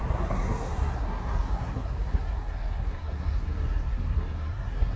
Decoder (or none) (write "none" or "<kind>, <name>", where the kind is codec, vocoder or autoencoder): codec, SNAC